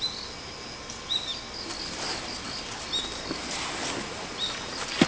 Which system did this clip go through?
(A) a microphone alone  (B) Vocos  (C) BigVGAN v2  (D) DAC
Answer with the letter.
A